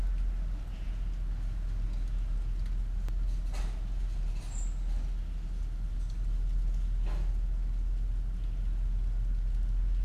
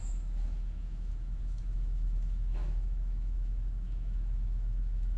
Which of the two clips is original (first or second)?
first